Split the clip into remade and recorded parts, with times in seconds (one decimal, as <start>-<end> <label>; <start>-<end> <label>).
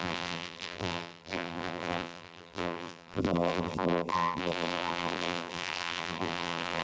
0.0-6.8 remade